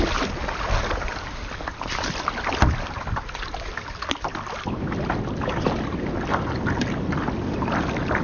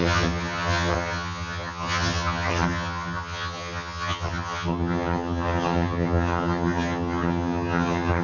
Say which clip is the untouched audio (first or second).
first